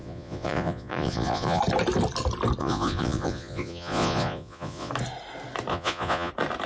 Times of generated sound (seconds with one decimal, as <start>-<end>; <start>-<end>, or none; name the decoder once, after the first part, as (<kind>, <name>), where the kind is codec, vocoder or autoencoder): 0.0-1.6 (vocoder, Vocos); 2.6-4.9; 5.7-6.3